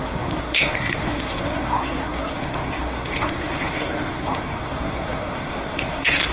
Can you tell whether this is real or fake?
fake